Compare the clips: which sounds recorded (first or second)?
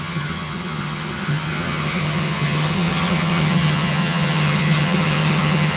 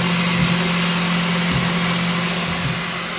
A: second